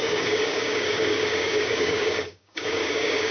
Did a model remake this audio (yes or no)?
yes